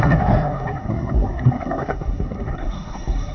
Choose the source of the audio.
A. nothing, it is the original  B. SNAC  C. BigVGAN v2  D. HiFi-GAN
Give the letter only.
B